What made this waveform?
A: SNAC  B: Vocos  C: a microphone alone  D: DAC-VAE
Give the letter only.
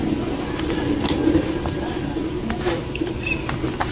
C